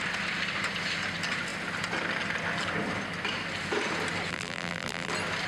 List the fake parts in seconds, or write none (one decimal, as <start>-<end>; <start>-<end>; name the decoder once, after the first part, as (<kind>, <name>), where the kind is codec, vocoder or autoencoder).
4.3-5.1 (vocoder, BigVGAN v2)